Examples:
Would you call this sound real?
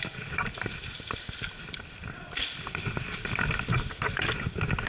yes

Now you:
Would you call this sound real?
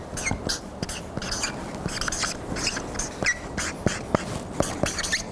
yes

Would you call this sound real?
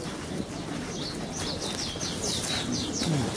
yes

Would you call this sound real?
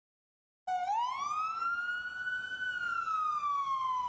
yes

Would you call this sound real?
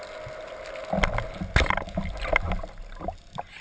yes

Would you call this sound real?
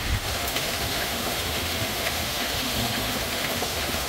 no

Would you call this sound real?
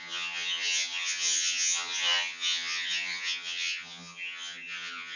no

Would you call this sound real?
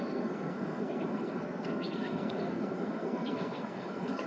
no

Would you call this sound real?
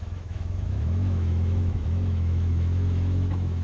no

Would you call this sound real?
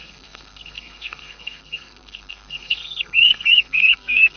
no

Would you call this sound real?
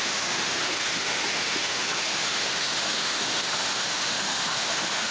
no